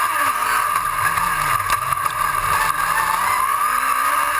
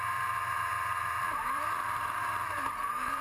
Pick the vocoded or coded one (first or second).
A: second